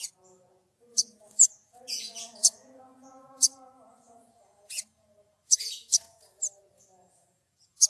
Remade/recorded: remade